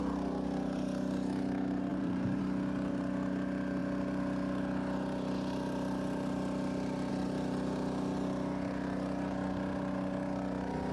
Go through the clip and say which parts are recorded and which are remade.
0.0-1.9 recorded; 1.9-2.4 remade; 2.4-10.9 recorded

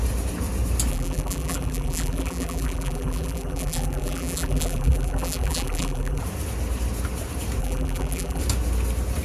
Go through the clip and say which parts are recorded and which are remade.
0.0-0.9 recorded; 0.9-6.2 remade; 6.2-7.6 recorded; 7.6-8.4 remade; 8.4-9.2 recorded

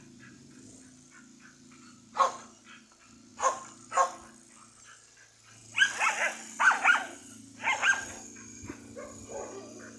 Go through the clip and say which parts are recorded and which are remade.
0.0-3.3 recorded; 3.3-3.9 remade; 3.9-7.2 recorded; 7.2-8.1 remade; 8.1-10.0 recorded

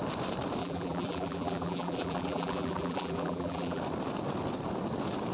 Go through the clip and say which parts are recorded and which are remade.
0.0-0.6 recorded; 0.6-3.8 remade; 3.8-5.3 recorded

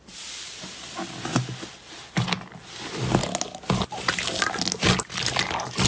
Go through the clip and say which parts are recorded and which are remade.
0.0-5.9 recorded

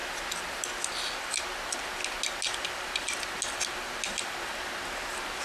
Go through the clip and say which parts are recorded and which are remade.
0.0-5.4 recorded

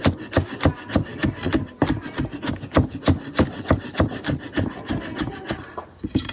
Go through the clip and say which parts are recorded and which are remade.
0.0-6.3 recorded

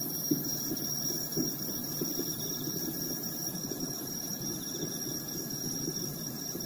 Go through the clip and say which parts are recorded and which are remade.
0.0-6.7 recorded